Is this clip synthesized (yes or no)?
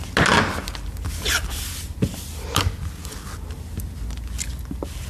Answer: no